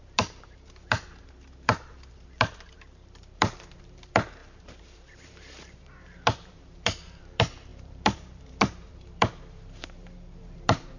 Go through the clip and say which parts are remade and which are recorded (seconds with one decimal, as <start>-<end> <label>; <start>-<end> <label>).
0.0-11.0 remade